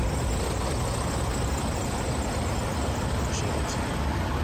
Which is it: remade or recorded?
recorded